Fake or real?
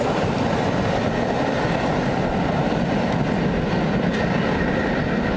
real